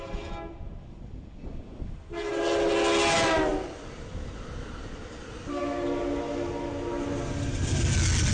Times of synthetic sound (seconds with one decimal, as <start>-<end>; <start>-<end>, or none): none